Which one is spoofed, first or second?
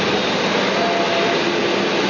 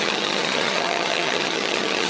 second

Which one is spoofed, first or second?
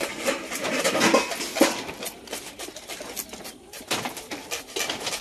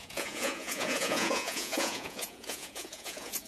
second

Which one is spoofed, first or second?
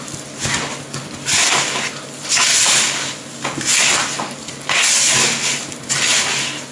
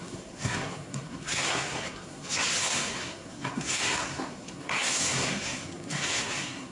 second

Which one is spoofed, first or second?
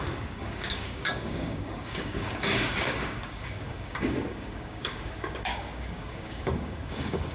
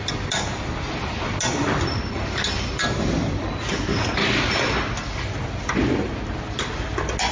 first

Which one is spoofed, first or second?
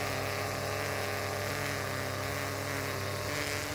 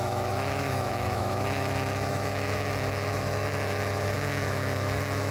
second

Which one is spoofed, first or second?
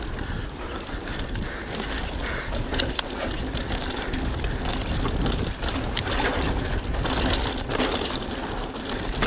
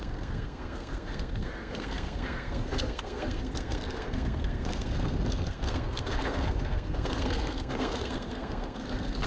second